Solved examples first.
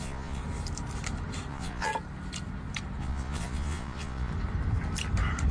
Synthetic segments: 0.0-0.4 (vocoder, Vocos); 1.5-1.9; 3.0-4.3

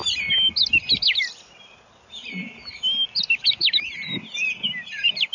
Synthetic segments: none

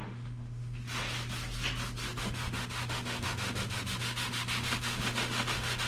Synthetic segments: 0.0-0.8 (autoencoder, DAC-VAE); 2.2-5.9

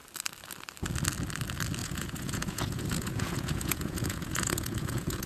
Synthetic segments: 1.8-5.3 (vocoder, Vocos)

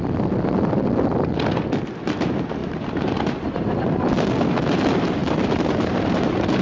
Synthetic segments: 2.6-4.1 (vocoder, BigVGAN v2); 5.2-6.6

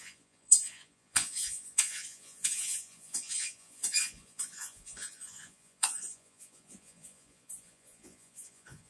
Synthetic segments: 0.0-8.9 (vocoder, Vocos)

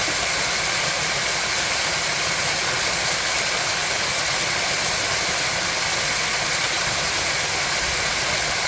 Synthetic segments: none